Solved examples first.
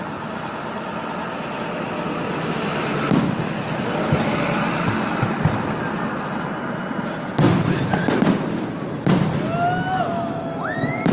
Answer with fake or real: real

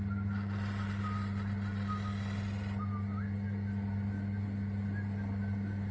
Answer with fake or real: real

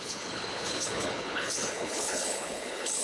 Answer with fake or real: fake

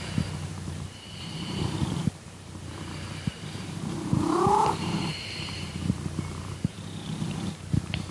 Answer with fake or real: fake